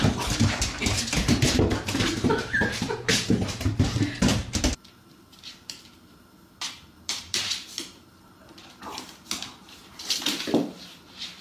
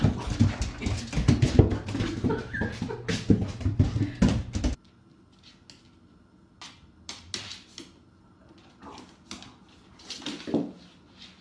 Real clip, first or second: second